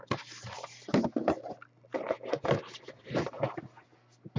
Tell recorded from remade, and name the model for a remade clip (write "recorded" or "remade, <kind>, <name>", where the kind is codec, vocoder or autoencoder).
recorded